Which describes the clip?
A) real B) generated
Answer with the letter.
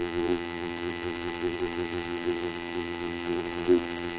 B